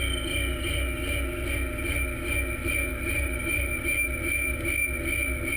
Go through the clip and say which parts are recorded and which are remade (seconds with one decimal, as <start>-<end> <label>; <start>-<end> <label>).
0.0-2.9 recorded; 2.9-3.7 remade; 3.7-5.6 recorded